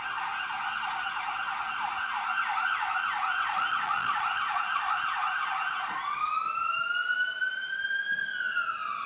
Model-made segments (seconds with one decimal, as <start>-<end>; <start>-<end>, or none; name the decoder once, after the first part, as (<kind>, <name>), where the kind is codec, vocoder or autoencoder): 3.4-4.8 (vocoder, Vocos)

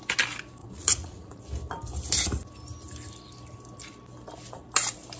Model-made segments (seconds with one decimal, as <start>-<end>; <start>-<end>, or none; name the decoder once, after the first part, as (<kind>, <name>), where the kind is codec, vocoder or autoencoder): 0.6-1.4 (vocoder, Vocos)

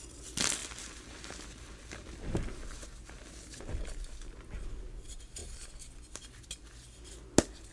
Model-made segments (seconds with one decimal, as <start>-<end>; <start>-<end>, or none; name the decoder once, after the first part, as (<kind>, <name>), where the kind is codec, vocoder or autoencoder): none